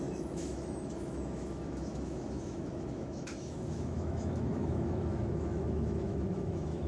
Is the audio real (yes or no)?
no